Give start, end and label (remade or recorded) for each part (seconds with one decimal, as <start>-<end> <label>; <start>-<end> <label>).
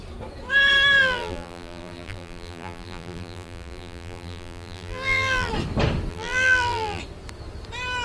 0.0-1.0 recorded; 1.0-5.5 remade; 5.5-6.1 recorded; 6.1-7.0 remade; 7.0-8.0 recorded